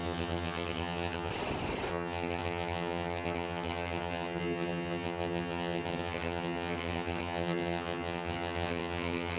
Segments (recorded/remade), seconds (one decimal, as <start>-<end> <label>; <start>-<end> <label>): 0.0-1.3 remade; 1.3-1.9 recorded; 1.9-9.4 remade